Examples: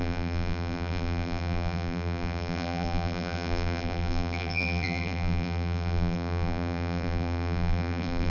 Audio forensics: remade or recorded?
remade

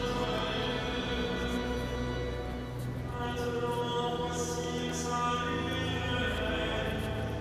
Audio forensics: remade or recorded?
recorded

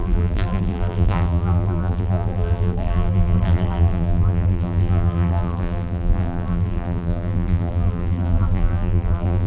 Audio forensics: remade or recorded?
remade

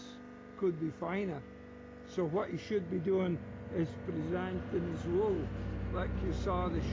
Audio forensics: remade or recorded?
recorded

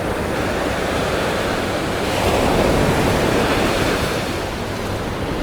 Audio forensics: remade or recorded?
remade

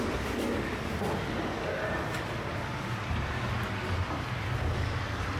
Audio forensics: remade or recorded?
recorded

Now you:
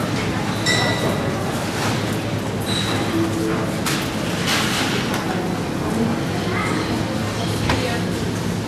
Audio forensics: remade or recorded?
recorded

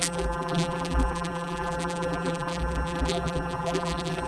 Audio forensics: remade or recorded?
remade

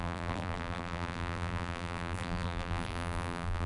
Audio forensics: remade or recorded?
remade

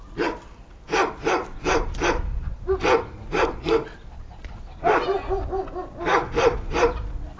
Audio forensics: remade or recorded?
recorded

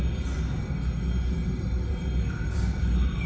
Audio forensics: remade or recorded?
recorded